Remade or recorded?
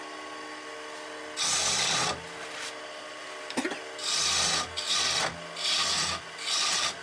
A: recorded